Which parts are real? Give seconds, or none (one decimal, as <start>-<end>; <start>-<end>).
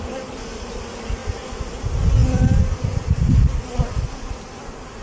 0.0-5.0